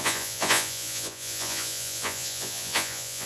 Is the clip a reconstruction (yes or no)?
yes